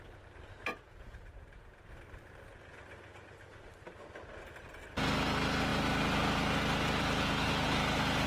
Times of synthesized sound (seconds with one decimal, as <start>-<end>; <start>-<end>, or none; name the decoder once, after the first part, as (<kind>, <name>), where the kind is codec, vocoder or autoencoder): 0.7-1.9 (vocoder, Vocos)